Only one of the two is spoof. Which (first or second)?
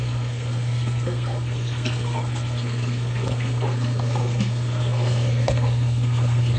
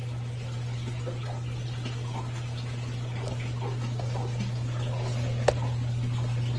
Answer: first